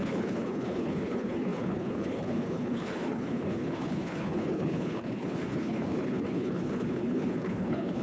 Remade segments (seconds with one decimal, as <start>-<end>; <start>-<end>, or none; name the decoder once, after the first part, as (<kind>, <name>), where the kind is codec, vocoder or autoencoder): 0.0-8.0 (codec, HILCodec)